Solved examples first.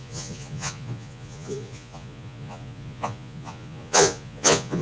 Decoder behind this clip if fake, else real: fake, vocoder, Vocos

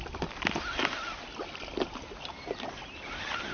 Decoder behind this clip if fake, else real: real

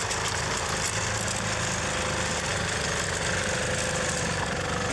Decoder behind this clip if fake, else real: real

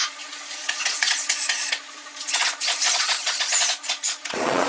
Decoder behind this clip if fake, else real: fake, vocoder, Vocos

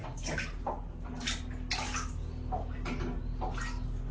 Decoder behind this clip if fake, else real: real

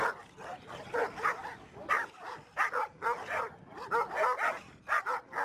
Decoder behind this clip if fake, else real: real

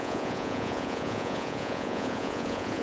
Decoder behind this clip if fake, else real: fake, vocoder, Vocos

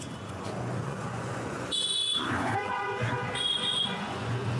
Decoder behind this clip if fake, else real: fake, vocoder, Vocos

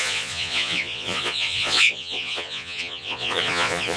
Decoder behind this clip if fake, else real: fake, vocoder, Vocos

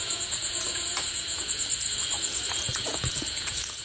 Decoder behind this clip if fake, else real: fake, vocoder, Vocos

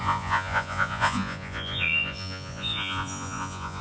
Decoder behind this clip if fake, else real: fake, vocoder, Vocos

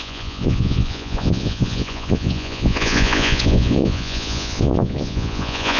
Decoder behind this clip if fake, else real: fake, vocoder, Vocos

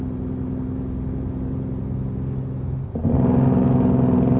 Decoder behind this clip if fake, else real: real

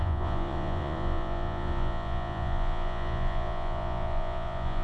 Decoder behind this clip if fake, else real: fake, vocoder, Vocos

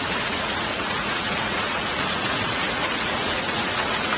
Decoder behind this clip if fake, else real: fake, vocoder, Vocos